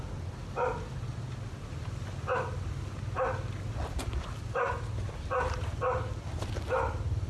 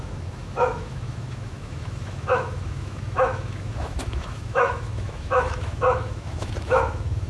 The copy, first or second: second